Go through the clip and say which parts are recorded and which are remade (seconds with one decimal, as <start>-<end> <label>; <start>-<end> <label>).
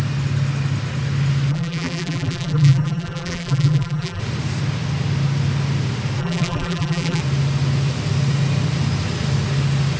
0.0-1.5 recorded; 1.5-4.2 remade; 4.2-6.2 recorded; 6.2-7.2 remade; 7.2-10.0 recorded